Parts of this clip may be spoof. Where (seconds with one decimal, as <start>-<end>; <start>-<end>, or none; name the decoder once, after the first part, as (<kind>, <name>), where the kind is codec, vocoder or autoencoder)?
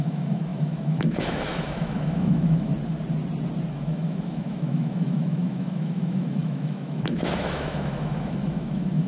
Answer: 0.0-2.7 (autoencoder, DAC-VAE); 3.7-9.1